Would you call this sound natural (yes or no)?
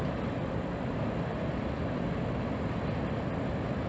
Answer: yes